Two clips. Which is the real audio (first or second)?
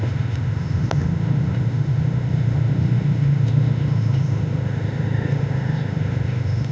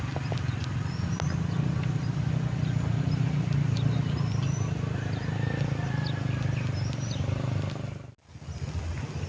second